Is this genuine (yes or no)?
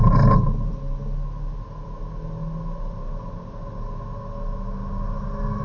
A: yes